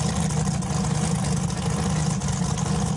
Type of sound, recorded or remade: recorded